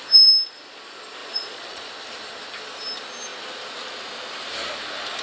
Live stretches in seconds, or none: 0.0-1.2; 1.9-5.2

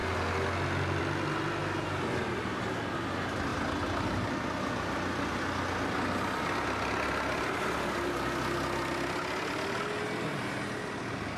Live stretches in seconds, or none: 0.0-11.4

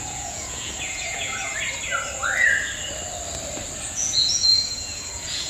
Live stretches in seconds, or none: 1.5-3.8

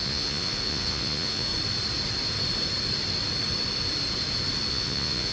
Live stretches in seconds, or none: 1.5-4.7

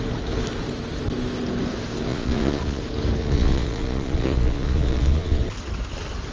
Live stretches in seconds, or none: 0.0-2.1; 2.8-3.2; 5.4-6.3

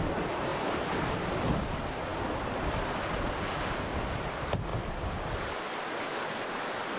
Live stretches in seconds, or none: 0.0-7.0